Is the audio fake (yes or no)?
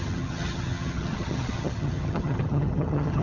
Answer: yes